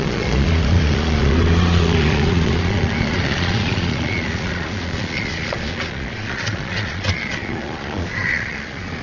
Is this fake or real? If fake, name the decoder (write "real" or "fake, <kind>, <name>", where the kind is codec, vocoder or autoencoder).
fake, vocoder, Vocos